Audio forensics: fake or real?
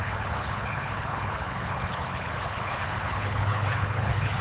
fake